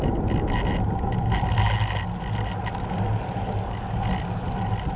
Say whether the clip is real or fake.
real